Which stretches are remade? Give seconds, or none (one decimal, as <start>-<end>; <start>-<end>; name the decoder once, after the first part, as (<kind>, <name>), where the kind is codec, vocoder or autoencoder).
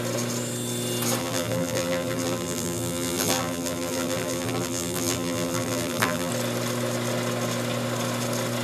1.2-6.3 (vocoder, BigVGAN v2)